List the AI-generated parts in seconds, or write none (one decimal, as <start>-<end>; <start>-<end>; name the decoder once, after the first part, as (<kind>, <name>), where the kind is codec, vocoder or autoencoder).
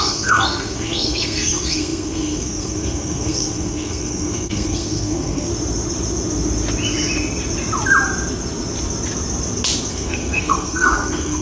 0.0-5.5 (codec, SNAC); 9.9-11.4